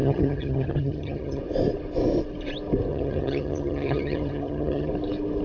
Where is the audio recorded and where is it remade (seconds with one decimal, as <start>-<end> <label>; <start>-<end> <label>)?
0.0-1.4 remade; 1.4-2.9 recorded; 2.9-4.9 remade; 4.9-5.4 recorded